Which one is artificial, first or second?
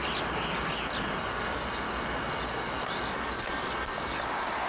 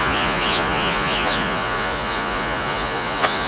second